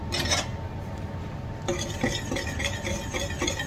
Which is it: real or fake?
real